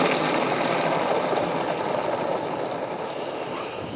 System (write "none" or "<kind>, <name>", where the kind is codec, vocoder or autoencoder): none